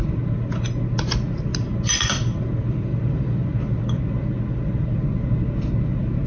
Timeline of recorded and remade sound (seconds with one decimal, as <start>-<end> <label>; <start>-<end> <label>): 0.0-6.3 recorded